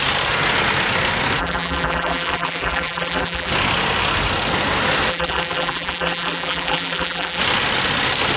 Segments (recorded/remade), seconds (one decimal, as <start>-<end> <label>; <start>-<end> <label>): 0.0-1.4 recorded; 1.4-3.5 remade; 3.5-5.1 recorded; 5.1-7.4 remade; 7.4-8.4 recorded